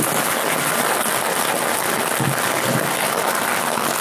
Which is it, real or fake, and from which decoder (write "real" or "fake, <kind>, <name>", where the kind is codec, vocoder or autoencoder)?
real